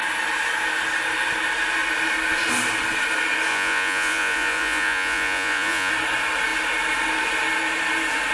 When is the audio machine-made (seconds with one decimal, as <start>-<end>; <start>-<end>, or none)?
3.5-5.9

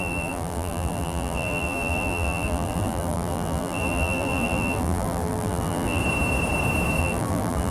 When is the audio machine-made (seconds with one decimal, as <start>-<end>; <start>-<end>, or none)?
0.0-6.0; 7.0-7.7

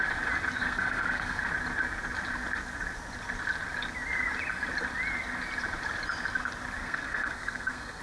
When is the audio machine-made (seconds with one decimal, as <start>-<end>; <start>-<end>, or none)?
0.6-1.5; 6.8-8.0

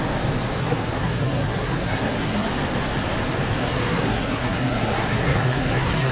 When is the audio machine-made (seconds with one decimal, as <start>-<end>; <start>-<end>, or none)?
0.6-2.5; 3.6-6.1

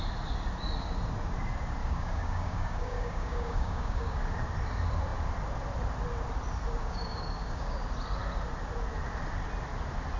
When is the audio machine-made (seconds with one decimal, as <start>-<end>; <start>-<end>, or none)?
1.8-4.2; 6.8-7.8

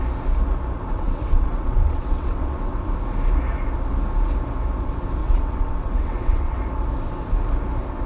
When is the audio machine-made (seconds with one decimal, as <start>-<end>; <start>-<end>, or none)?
0.9-2.7; 5.2-6.6

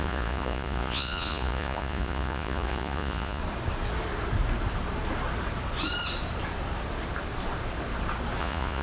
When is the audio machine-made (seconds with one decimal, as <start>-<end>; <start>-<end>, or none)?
0.0-3.4; 8.4-8.8

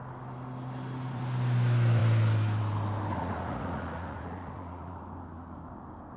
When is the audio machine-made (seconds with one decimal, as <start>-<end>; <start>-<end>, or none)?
3.1-5.0